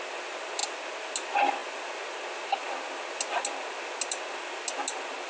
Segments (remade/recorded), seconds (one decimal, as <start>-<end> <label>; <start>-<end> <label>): 0.0-5.3 recorded